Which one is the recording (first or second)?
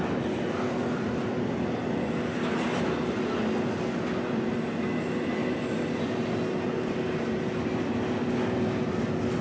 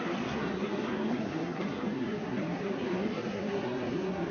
first